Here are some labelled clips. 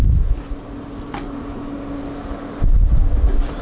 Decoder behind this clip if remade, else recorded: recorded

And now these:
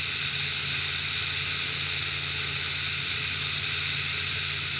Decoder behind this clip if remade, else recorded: recorded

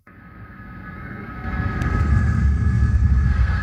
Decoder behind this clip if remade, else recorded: remade, codec, SNAC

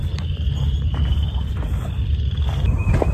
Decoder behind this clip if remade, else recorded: recorded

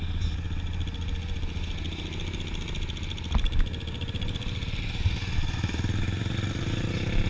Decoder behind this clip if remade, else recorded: recorded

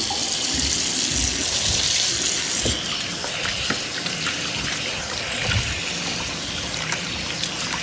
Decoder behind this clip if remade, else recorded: recorded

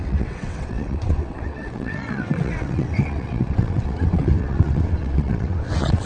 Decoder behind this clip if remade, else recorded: remade, vocoder, WaveNeXt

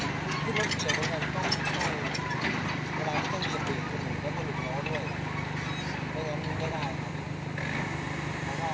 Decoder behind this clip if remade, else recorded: recorded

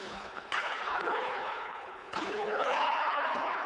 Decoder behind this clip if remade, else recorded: remade, codec, HILCodec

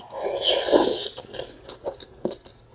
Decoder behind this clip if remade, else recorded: recorded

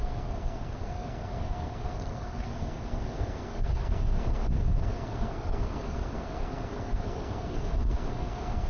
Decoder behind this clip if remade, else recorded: remade, codec, SNAC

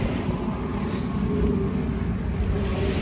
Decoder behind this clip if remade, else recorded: recorded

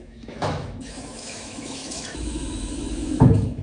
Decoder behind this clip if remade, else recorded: remade, autoencoder, DAC-VAE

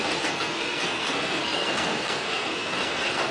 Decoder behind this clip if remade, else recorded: remade, codec, SNAC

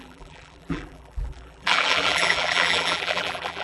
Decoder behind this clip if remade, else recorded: remade, vocoder, BigVGAN v2